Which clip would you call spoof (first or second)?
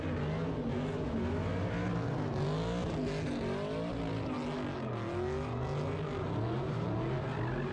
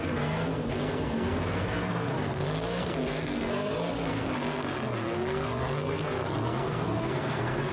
second